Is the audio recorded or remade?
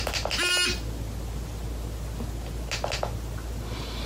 recorded